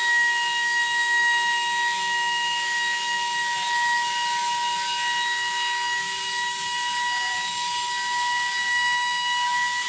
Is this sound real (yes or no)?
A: no